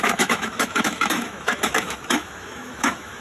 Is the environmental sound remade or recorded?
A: remade